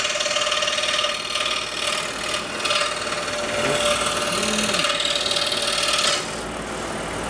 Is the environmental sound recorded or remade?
recorded